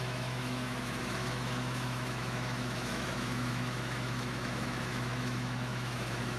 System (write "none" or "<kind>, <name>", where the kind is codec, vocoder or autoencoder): autoencoder, DAC-VAE